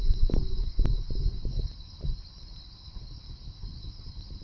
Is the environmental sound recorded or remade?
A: remade